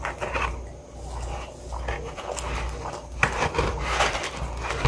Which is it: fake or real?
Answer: real